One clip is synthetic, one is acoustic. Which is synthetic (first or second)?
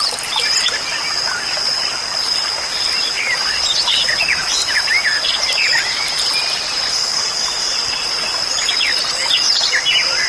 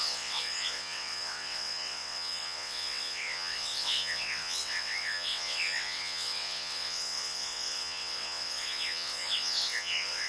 second